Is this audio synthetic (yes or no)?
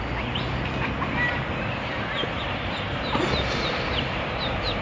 no